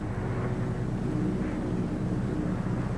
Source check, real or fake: real